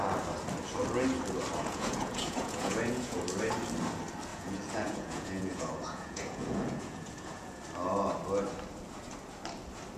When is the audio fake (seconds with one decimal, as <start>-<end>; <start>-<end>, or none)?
1.6-3.2; 4.3-7.6